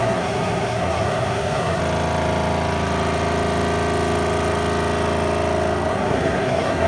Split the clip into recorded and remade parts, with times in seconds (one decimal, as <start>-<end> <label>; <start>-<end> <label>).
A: 0.0-1.8 remade; 1.8-5.9 recorded; 5.9-6.9 remade